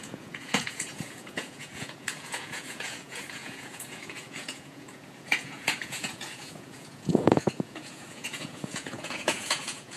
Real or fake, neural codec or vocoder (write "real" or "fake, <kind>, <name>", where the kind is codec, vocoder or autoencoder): fake, vocoder, Vocos